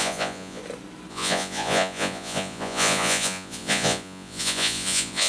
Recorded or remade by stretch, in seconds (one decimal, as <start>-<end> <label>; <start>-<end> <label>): 0.0-0.6 remade; 0.6-1.1 recorded; 1.1-5.3 remade